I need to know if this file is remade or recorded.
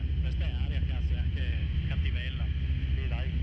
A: recorded